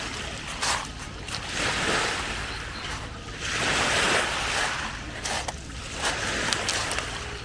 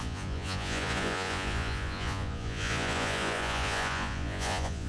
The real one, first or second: first